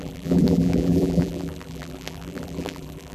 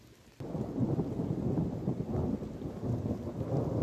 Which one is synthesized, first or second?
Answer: first